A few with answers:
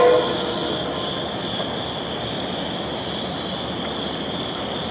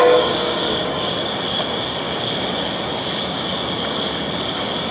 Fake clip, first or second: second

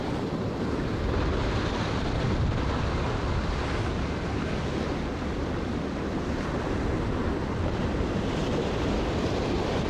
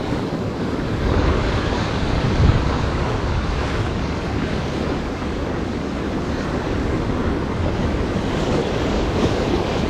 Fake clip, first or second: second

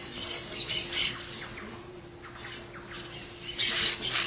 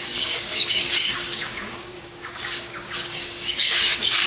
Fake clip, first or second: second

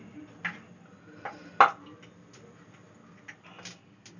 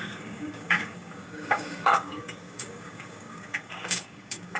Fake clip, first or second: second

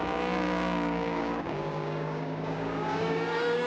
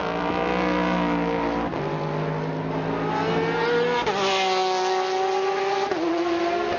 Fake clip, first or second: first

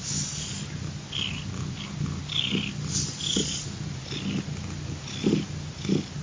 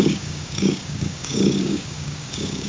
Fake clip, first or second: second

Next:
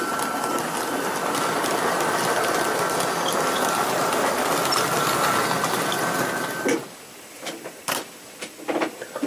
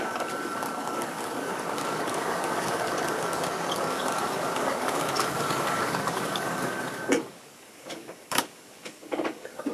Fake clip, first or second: second